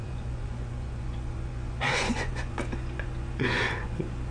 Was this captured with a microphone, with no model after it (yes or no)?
no